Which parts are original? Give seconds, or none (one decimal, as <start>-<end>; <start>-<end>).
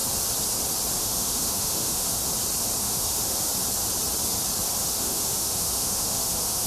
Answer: 0.0-1.0; 2.2-2.8; 3.5-4.8